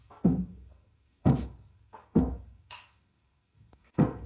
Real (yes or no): no